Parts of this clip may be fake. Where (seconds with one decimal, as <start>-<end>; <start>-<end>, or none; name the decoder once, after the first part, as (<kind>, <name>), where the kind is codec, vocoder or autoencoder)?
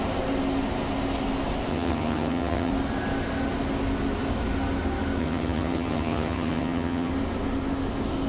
1.7-2.7 (vocoder, HiFi-GAN); 5.2-7.1